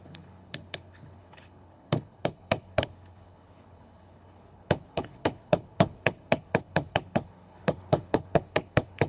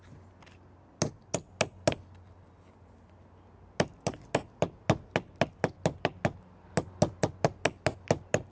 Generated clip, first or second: first